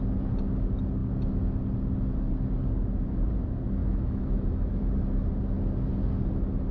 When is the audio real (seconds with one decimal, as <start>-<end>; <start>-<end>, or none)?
0.0-3.8; 4.8-6.7